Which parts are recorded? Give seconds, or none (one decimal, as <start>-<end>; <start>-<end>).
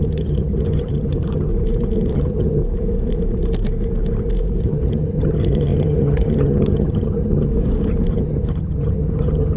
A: 1.5-2.1; 2.6-4.6; 7.5-8.1